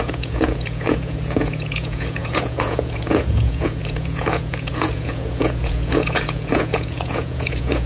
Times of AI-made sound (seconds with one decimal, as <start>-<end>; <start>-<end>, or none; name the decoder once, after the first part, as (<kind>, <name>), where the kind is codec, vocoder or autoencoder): 0.0-7.9 (vocoder, Vocos)